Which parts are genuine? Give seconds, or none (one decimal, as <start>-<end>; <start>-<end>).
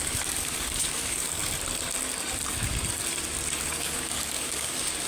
1.4-3.6